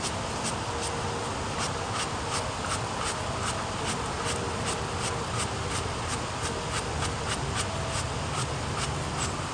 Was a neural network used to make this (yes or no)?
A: no